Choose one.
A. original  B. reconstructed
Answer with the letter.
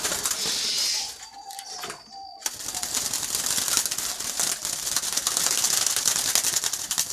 A